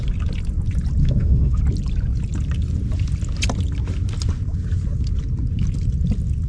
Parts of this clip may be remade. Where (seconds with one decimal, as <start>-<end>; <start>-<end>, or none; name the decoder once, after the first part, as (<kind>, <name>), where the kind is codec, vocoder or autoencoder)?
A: 1.0-1.6 (autoencoder, DAC-VAE)